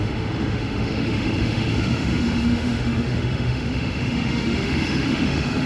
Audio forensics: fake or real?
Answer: fake